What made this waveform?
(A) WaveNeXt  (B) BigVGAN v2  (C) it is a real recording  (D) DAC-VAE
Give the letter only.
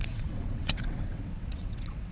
A